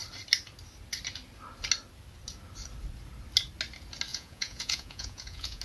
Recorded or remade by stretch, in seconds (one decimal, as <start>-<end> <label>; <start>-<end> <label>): 0.0-4.1 recorded; 4.1-5.6 remade